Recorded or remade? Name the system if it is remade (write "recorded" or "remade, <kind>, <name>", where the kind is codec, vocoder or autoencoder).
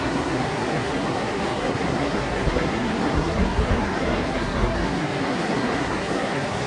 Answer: remade, codec, SNAC